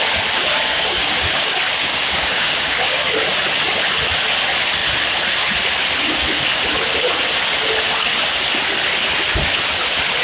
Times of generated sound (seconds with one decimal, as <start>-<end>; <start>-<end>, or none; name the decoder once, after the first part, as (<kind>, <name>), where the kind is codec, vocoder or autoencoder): 0.7-3.1 (codec, DAC)